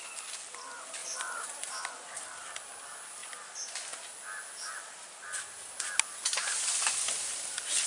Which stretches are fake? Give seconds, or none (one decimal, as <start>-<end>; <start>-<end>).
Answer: 1.0-1.7